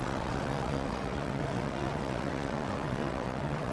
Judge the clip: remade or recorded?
remade